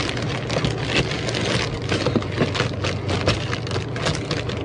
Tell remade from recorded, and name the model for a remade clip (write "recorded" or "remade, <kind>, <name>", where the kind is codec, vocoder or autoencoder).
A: recorded